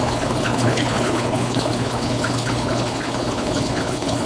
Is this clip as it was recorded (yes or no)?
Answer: no